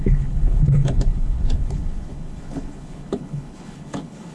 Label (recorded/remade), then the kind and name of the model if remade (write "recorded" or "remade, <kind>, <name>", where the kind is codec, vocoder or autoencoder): remade, codec, HILCodec